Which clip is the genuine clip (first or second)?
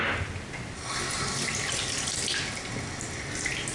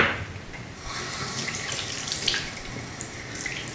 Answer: first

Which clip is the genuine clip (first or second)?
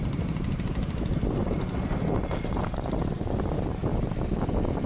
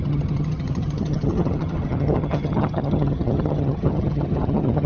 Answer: first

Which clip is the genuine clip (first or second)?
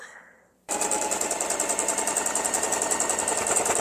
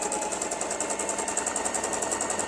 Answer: second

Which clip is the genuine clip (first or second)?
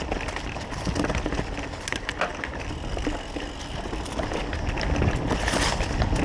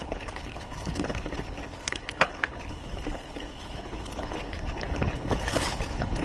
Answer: first